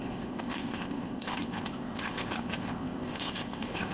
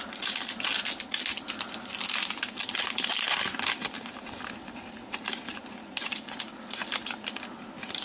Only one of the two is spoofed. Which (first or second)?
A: first